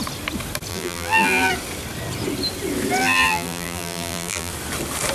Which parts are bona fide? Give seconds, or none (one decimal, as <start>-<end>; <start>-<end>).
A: 0.0-0.7; 1.5-3.0; 4.5-5.1

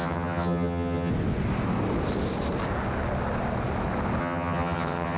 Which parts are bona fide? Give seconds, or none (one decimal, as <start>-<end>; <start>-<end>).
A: 1.1-4.2

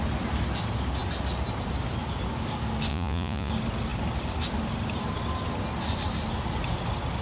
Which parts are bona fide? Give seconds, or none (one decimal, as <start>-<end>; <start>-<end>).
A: 0.0-2.9; 3.5-7.2